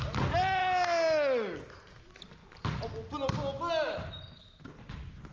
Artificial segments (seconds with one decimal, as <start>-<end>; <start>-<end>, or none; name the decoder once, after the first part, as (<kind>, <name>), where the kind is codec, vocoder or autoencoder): none